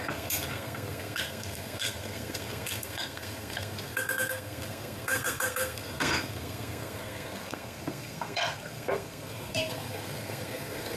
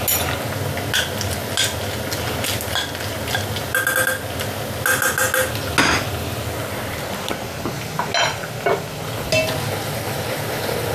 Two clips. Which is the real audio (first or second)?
second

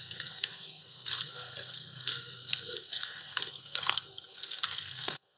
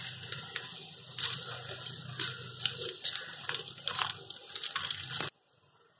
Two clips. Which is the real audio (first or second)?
second